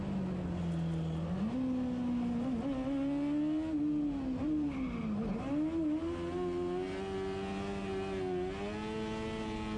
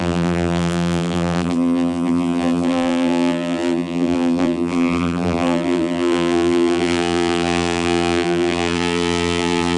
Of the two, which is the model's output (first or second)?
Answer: second